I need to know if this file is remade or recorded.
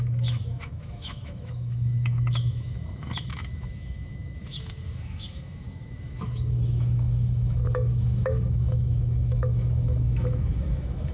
remade